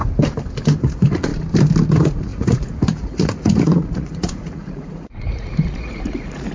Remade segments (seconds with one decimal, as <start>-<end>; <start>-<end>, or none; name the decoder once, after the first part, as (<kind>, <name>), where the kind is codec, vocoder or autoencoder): 0.8-1.3 (vocoder, Vocos); 1.9-6.5